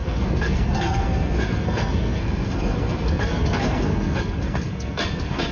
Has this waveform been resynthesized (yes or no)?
yes